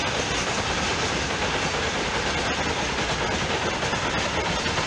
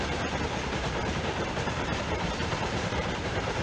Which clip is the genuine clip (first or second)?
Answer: first